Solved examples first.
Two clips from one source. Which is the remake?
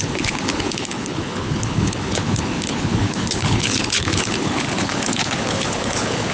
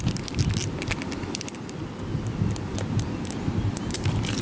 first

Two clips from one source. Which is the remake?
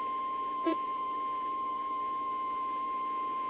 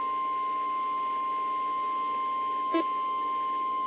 first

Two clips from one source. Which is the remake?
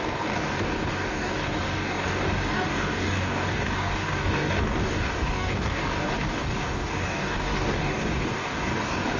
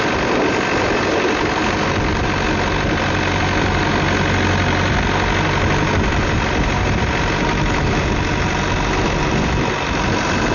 first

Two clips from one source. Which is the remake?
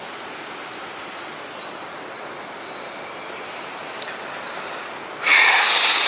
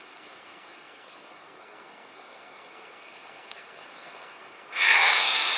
second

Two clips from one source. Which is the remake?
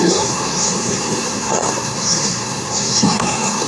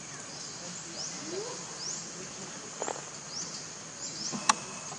first